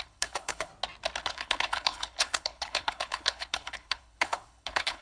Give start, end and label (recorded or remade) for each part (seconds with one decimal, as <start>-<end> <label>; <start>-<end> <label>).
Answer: 0.0-0.7 remade; 0.7-1.2 recorded; 1.2-5.0 remade